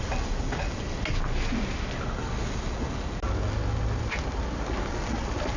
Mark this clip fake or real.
real